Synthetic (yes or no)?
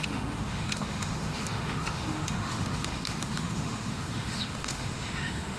yes